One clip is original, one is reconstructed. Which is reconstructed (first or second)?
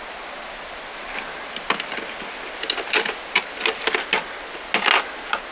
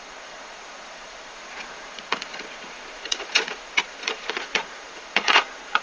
second